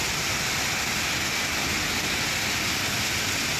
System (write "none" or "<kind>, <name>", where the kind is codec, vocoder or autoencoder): none